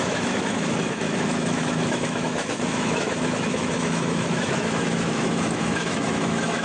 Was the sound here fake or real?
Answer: fake